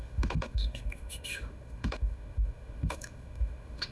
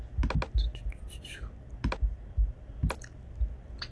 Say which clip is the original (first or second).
second